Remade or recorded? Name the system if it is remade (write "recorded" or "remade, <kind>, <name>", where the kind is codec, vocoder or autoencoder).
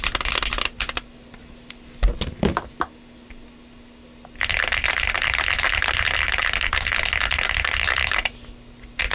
recorded